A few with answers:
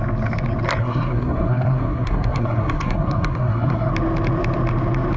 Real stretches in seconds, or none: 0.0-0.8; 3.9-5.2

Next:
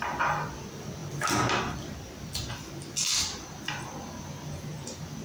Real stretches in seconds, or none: 0.0-5.2

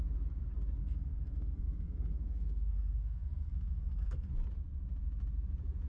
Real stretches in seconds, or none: 0.0-0.8; 4.3-5.9

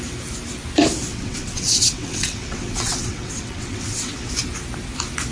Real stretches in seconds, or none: 0.0-1.1; 4.3-5.3

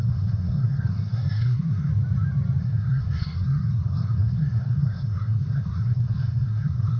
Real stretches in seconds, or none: 1.9-2.6

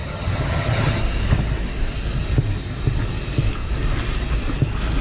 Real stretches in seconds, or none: 1.0-5.0

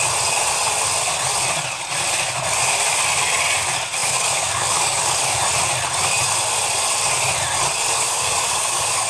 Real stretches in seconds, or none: 0.0-4.0; 5.4-7.9

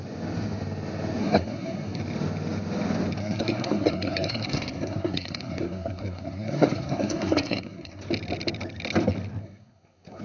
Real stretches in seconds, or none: 0.0-1.2; 2.0-3.2; 8.0-9.4